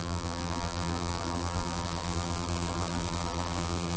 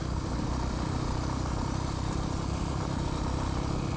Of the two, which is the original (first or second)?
second